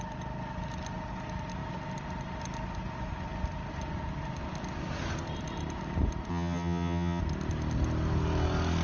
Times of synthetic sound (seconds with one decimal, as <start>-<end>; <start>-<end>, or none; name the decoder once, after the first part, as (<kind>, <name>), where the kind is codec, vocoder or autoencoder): 6.3-7.2 (vocoder, HiFi-GAN)